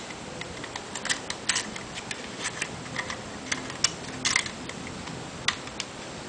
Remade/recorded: recorded